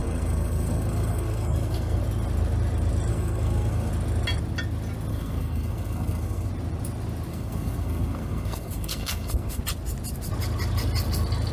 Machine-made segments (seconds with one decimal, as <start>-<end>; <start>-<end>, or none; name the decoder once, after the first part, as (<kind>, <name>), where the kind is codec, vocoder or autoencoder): 0.0-2.0 (codec, SNAC); 3.1-3.9; 5.1-6.5; 7.3-9.6